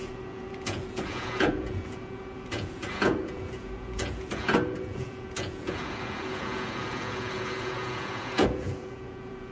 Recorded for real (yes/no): no